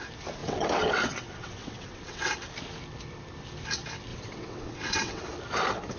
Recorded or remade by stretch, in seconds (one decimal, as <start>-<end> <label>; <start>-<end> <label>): 0.0-0.4 recorded; 0.4-2.3 remade; 2.3-4.1 recorded; 4.1-5.2 remade; 5.2-6.0 recorded